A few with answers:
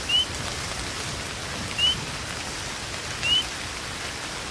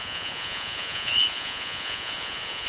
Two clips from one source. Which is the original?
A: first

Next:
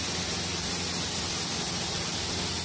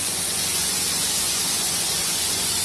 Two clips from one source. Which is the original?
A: first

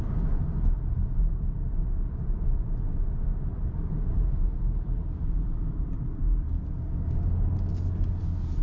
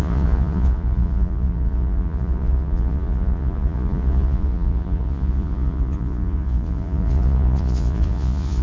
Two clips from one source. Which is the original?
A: first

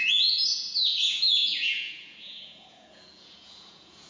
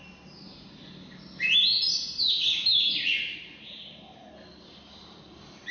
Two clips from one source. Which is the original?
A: second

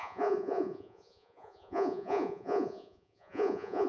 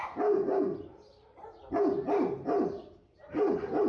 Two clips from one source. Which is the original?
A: second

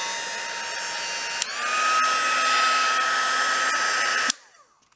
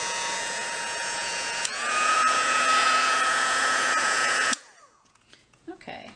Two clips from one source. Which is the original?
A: first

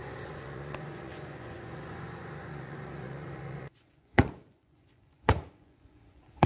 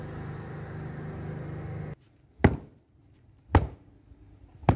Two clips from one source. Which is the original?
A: second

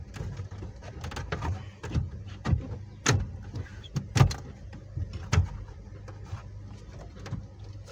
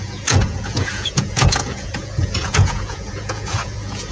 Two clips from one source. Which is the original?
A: first